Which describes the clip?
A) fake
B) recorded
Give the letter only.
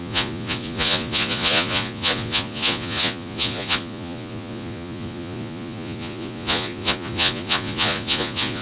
A